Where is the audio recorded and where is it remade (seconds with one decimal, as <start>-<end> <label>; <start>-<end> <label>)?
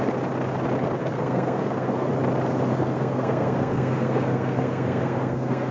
0.0-1.0 recorded; 1.0-2.1 remade; 2.1-2.7 recorded; 2.7-5.7 remade